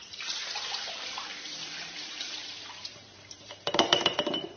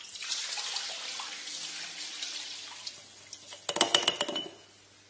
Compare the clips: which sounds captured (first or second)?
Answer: second